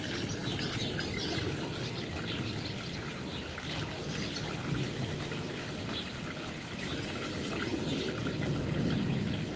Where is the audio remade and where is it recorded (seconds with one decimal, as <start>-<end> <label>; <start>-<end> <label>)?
0.0-9.6 recorded